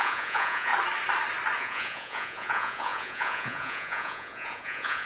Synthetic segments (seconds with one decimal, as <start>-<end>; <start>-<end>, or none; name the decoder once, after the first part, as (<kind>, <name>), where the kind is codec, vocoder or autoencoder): 0.0-0.7 (vocoder, Vocos); 1.6-5.1